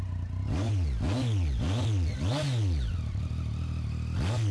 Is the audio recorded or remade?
recorded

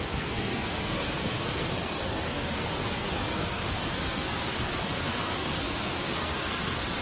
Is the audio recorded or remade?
remade